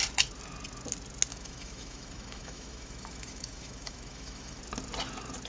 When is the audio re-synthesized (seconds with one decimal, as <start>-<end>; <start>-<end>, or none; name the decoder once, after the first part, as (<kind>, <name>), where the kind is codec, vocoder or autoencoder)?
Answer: 1.3-4.6 (autoencoder, DAC-VAE)